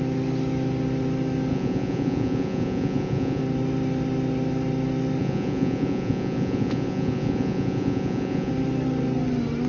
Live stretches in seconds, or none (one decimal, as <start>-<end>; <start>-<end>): 0.0-1.5; 3.4-5.2; 8.5-9.7